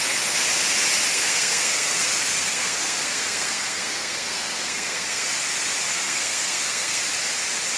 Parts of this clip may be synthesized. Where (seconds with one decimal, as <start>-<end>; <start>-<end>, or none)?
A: 1.1-5.4; 5.9-7.0